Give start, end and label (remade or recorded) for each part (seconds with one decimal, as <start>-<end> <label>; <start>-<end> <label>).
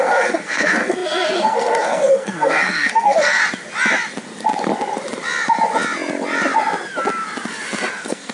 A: 0.0-3.4 remade; 3.4-7.9 recorded; 7.9-8.3 remade